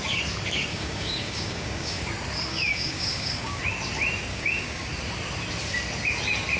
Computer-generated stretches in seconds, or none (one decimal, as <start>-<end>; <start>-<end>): 0.7-2.1; 2.5-3.6; 4.3-4.9